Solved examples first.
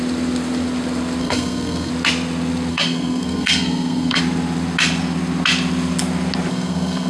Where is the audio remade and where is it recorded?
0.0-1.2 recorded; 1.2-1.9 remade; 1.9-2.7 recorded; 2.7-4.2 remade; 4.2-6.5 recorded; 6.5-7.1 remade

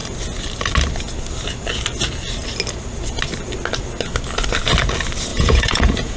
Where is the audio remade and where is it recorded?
0.0-5.3 recorded; 5.3-6.2 remade

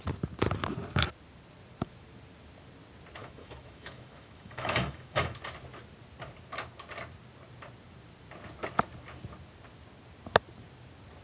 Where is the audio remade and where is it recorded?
0.0-3.2 recorded; 3.2-5.4 remade; 5.4-11.2 recorded

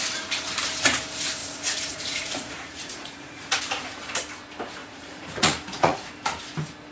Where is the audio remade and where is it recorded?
0.0-1.4 recorded; 1.4-3.6 remade; 3.6-4.8 recorded; 4.8-6.1 remade; 6.1-6.9 recorded

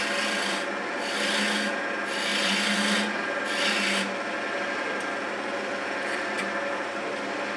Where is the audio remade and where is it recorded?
0.0-7.6 recorded

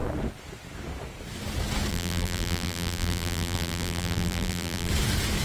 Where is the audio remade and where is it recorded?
0.0-1.9 recorded; 1.9-4.9 remade; 4.9-5.4 recorded